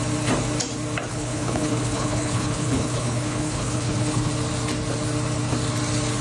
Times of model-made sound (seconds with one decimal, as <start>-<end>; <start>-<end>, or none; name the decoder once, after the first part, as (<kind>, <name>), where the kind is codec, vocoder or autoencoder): 1.1-4.3 (codec, HILCodec)

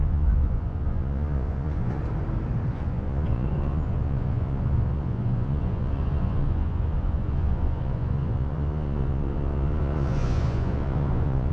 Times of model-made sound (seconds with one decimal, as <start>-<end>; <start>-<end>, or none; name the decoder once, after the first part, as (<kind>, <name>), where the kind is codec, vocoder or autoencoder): 0.0-2.0 (vocoder, Vocos); 2.7-11.5

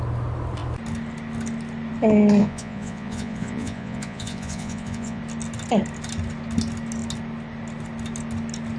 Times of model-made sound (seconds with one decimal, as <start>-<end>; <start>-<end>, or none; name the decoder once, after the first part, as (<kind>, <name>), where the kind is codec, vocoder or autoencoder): 2.4-5.2 (vocoder, Vocos)

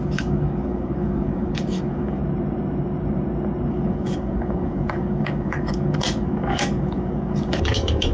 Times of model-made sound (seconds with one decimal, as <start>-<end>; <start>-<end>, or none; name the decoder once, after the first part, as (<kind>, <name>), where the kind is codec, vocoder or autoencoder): 0.0-2.2 (codec, DAC); 3.7-8.1

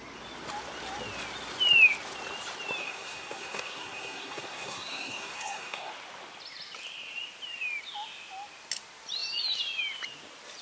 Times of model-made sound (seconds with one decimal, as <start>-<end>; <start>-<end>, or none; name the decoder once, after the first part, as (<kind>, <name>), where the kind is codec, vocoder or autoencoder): 2.8-5.9 (codec, SNAC)

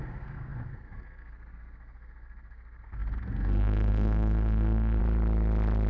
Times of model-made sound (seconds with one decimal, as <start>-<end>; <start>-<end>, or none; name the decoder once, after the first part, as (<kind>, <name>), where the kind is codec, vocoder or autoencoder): 0.0-5.0 (codec, SNAC)

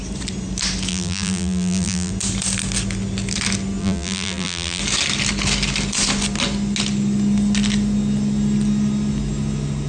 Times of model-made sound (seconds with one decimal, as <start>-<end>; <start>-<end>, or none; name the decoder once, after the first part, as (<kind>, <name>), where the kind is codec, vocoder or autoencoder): 0.9-2.1 (vocoder, BigVGAN v2); 3.8-4.8

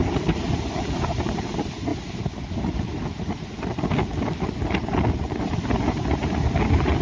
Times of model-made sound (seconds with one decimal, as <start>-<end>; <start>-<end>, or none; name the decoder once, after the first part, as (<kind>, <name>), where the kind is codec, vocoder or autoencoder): none